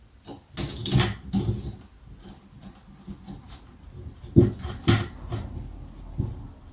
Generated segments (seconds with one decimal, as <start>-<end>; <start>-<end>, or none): none